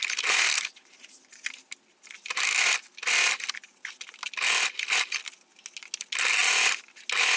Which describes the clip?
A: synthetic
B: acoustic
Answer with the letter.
B